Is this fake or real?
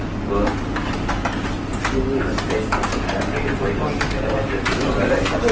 real